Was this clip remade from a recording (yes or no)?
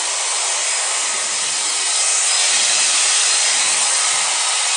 no